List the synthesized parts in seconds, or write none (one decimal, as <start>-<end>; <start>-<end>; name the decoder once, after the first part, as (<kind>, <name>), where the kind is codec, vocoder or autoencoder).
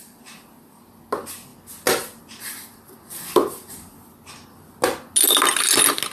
none